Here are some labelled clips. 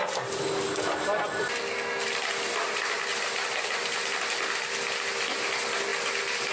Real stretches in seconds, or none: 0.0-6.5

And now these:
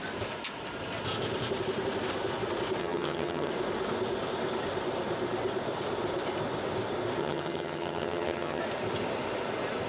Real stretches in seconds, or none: 0.0-2.8; 3.5-7.2; 8.6-9.9

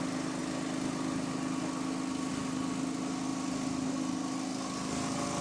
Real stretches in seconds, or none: 0.0-5.4